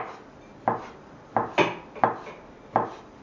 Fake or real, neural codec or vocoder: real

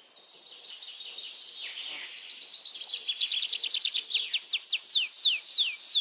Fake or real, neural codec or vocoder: real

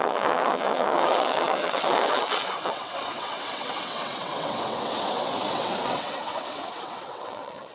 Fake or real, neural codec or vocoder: fake, vocoder, WaveNeXt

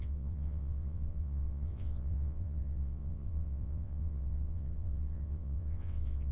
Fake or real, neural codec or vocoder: fake, vocoder, WaveNeXt